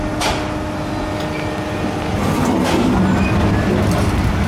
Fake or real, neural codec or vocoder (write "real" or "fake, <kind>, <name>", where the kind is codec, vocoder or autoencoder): real